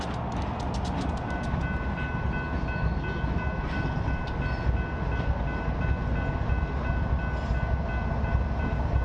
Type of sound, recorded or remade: recorded